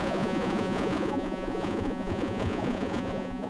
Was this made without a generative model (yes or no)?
no